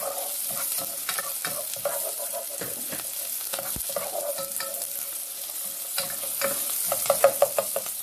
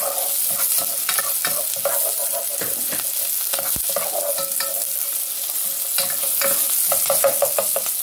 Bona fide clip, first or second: second